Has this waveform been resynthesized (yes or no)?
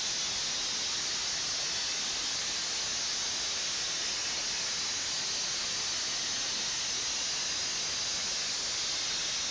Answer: no